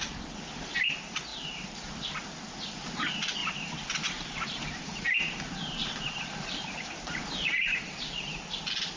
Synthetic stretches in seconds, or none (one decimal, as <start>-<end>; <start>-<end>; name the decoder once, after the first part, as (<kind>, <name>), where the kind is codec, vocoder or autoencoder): 1.3-1.9 (vocoder, BigVGAN v2); 3.4-8.4